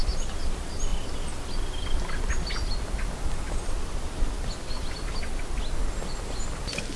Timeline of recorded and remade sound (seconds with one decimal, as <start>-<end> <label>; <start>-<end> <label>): 0.0-7.0 recorded